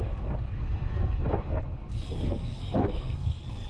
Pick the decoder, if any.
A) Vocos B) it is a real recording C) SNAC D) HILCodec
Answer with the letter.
C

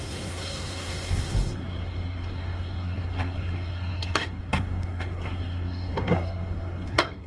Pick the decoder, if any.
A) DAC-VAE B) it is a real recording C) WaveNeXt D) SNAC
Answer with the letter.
D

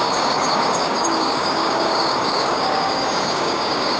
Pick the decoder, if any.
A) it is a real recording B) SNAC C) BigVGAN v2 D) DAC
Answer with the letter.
D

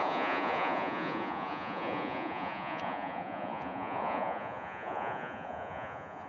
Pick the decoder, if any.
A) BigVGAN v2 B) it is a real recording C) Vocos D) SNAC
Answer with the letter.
C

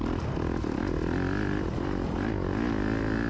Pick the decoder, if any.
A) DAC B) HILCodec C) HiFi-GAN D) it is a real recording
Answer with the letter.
D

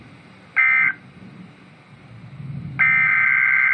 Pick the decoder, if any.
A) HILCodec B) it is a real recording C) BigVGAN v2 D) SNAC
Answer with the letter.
B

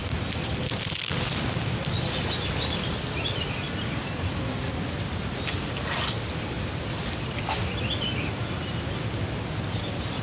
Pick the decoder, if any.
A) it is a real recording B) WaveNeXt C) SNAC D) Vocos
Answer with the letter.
A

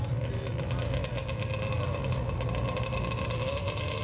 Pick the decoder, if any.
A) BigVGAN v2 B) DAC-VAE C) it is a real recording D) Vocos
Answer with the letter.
C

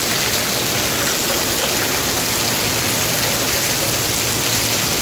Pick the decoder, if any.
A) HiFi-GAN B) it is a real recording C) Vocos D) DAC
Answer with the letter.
B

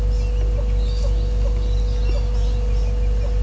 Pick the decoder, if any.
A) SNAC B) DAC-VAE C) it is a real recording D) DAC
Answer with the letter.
C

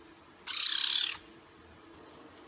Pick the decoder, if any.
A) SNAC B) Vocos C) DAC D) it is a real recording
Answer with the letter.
D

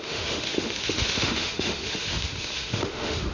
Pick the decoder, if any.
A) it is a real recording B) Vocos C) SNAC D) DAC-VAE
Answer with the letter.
D